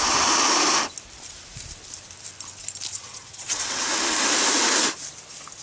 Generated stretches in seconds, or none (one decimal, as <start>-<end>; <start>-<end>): 2.9-3.8